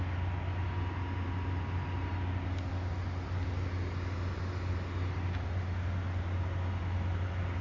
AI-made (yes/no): no